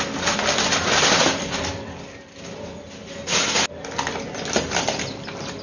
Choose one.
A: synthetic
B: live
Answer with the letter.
B